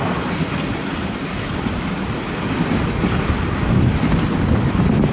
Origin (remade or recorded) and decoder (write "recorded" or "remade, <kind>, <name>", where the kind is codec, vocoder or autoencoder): recorded